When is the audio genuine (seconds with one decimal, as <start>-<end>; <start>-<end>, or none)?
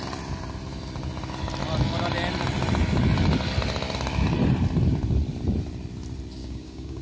0.0-6.4